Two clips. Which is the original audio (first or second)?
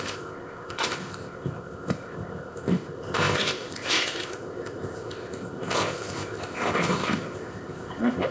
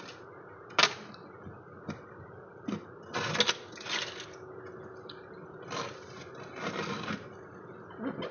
second